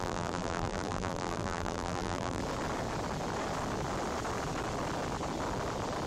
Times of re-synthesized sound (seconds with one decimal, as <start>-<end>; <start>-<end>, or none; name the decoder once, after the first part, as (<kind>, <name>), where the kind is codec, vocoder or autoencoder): 0.0-2.4 (vocoder, BigVGAN v2)